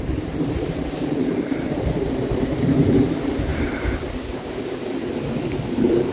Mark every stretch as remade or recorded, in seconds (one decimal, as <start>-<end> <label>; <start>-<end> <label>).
0.0-3.5 remade; 3.5-5.4 recorded; 5.4-6.1 remade